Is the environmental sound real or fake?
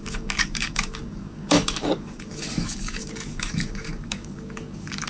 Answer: fake